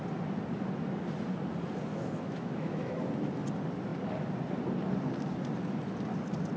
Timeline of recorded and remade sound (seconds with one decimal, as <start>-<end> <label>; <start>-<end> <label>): 0.0-1.9 recorded; 1.9-3.0 remade; 3.0-6.6 recorded